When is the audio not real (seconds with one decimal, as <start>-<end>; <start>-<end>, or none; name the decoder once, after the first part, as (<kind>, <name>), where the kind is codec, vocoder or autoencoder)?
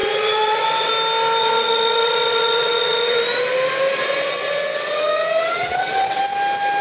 0.0-0.9 (vocoder, WaveNeXt); 1.4-3.2; 4.0-6.2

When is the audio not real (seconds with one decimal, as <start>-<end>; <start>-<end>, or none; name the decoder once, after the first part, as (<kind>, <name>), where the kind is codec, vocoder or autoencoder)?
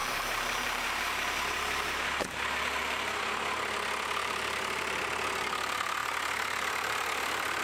0.0-3.2 (vocoder, BigVGAN v2); 4.2-5.0; 6.0-7.6